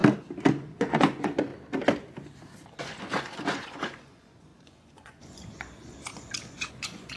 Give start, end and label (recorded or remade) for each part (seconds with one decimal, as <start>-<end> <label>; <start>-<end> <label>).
0.0-0.5 recorded; 0.5-1.5 remade; 1.5-2.8 recorded; 2.8-7.2 remade